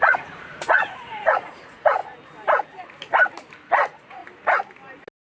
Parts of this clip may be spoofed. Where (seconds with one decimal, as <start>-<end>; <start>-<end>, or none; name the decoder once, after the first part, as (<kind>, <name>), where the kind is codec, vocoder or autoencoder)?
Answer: 0.0-2.0 (vocoder, Vocos); 3.7-4.2

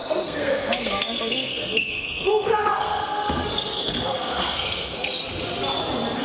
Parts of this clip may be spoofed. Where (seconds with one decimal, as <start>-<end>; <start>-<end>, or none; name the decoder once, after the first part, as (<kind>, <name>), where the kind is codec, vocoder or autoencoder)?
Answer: 0.0-5.2 (codec, SNAC)

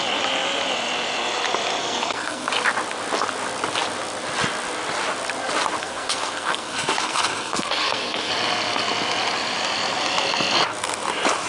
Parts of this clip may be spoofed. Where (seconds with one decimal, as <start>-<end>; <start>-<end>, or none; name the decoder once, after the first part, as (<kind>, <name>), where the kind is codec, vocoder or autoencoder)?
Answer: 1.8-2.5 (codec, SNAC); 5.8-8.3

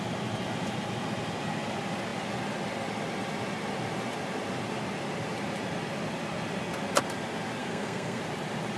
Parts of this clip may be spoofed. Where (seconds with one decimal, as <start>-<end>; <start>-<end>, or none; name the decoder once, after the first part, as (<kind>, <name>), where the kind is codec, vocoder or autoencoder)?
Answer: 7.6-8.2 (codec, SNAC)

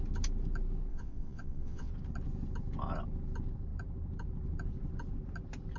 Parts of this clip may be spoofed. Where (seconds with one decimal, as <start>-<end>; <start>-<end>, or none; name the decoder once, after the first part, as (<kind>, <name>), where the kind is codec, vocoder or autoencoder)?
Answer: 0.9-1.9 (vocoder, WaveNeXt)

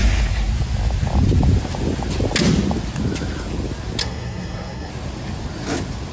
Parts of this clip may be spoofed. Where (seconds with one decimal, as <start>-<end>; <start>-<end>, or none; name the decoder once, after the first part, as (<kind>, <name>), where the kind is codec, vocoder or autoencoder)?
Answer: 4.0-4.9 (codec, SNAC)

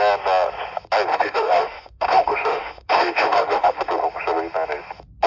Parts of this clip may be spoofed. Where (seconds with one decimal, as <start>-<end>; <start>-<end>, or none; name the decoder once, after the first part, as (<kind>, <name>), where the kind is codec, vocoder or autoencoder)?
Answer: 1.1-3.9 (autoencoder, DAC-VAE)

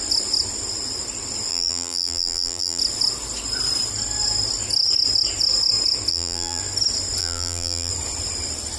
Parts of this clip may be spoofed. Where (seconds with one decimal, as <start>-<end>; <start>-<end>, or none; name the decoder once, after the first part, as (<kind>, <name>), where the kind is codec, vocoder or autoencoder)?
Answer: 1.5-2.8 (vocoder, BigVGAN v2); 6.1-6.6; 7.2-7.9